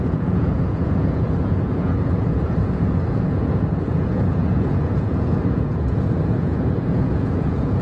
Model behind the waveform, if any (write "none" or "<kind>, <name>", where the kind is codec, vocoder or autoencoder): vocoder, Vocos